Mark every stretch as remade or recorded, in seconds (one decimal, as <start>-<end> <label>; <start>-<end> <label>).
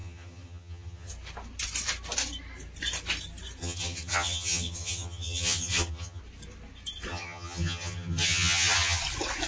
0.0-1.1 remade; 1.1-3.6 recorded; 3.6-6.2 remade; 6.2-7.1 recorded; 7.1-9.0 remade; 9.0-9.5 recorded